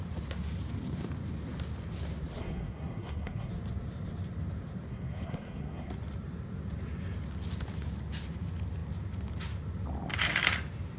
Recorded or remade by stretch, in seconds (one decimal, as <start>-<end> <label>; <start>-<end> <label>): 0.0-2.4 recorded; 2.4-3.5 remade; 3.5-4.9 recorded; 4.9-5.9 remade; 5.9-11.0 recorded